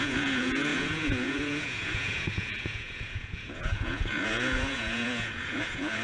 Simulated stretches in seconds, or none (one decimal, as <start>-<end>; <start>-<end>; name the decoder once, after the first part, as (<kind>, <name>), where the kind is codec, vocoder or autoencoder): 0.0-6.0 (vocoder, Vocos)